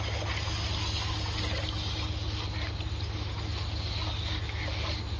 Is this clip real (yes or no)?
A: yes